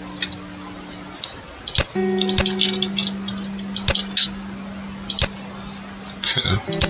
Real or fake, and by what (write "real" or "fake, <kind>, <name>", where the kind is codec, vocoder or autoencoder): real